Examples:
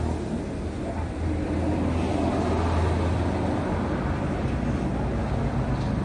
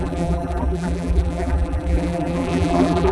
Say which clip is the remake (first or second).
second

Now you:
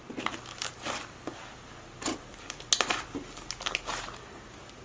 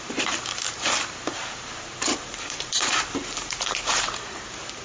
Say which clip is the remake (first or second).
second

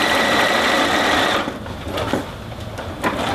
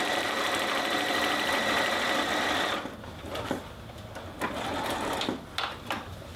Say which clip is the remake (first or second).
first